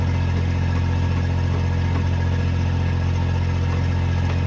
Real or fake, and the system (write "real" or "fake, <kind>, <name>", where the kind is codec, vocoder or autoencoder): real